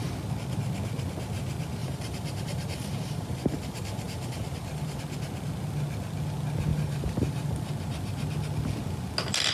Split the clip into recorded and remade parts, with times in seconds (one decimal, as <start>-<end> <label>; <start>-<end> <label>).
0.0-1.8 recorded; 1.8-5.0 remade; 5.0-6.7 recorded; 6.7-7.7 remade; 7.7-9.5 recorded

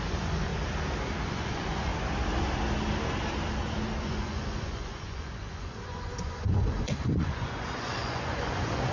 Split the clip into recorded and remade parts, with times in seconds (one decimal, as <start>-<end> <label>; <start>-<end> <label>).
0.0-0.5 remade; 0.5-1.3 recorded; 1.3-1.9 remade; 1.9-4.0 recorded; 4.0-8.9 remade

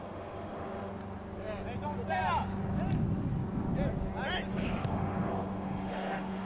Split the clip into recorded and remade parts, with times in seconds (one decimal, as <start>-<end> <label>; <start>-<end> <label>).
0.0-0.9 remade; 0.9-4.5 recorded; 4.5-6.5 remade

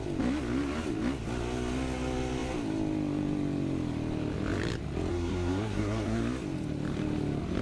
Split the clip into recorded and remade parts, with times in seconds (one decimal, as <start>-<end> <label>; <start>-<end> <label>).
0.0-5.1 recorded; 5.1-6.2 remade; 6.2-7.6 recorded

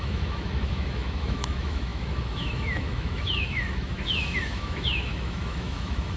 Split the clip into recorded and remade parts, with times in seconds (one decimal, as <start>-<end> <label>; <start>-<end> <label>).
0.0-6.2 remade